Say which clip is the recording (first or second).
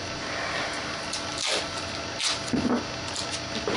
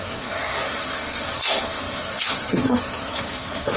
first